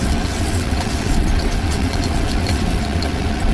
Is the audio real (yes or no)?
no